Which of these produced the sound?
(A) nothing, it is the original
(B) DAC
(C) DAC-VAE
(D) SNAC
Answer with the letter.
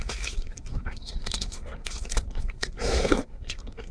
D